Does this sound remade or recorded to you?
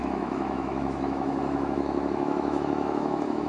remade